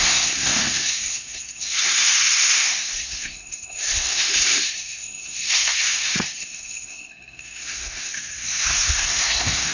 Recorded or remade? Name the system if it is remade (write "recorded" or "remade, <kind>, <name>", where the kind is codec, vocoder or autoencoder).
remade, codec, SNAC